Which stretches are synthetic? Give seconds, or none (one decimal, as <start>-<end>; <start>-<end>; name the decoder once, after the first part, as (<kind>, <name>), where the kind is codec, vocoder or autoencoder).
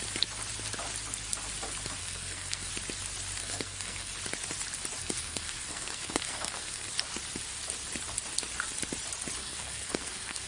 2.0-2.7 (codec, SNAC); 3.4-4.1; 5.0-6.9; 9.4-10.5